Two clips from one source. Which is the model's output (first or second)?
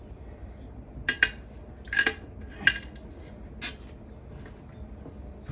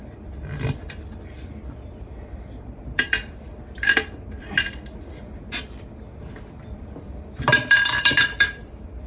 second